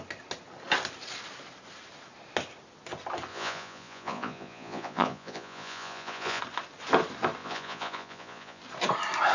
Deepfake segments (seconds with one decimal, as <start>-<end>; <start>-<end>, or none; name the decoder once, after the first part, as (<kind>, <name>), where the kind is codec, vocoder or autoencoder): 3.3-6.4 (vocoder, Vocos); 7.4-8.6